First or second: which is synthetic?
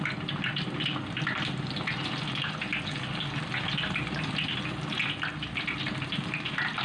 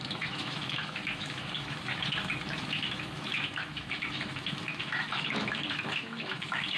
second